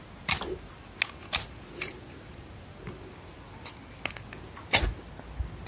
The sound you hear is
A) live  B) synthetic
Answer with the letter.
A